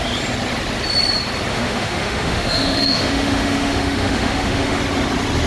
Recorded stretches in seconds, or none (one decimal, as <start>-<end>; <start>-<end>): 0.0-1.5; 4.8-5.5